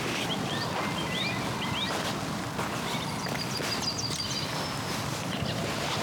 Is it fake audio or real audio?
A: real